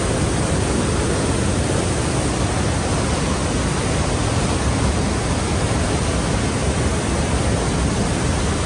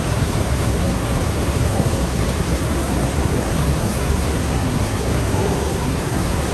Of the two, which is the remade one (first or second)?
second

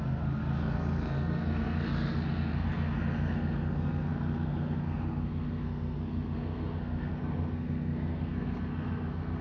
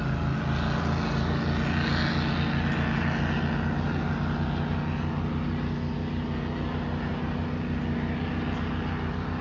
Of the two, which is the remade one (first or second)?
first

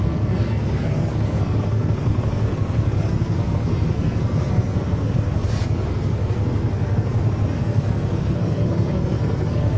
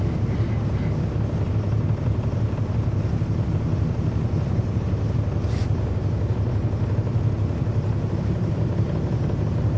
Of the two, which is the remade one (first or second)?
first